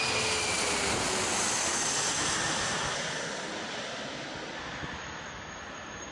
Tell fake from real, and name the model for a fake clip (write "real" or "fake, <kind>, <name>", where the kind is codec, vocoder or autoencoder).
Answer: real